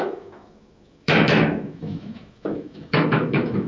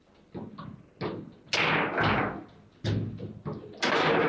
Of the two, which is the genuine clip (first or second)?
second